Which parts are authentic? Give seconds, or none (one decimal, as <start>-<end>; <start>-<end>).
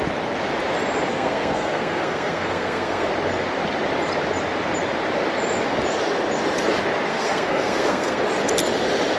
0.0-1.1; 3.1-7.1; 8.2-9.2